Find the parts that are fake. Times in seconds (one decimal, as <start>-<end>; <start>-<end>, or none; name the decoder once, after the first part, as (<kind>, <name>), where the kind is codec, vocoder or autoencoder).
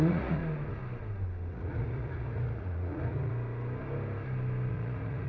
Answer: 0.0-0.4 (vocoder, Vocos); 1.5-3.3; 4.7-5.3